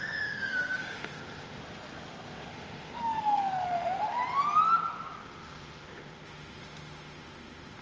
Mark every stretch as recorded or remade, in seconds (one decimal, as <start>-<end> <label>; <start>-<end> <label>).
0.0-1.6 remade; 1.6-2.5 recorded; 2.5-4.2 remade; 4.2-5.2 recorded; 5.2-7.8 remade